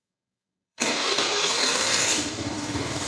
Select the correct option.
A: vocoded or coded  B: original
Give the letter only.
A